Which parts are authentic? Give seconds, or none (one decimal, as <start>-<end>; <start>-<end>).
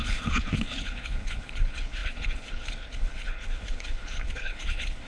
none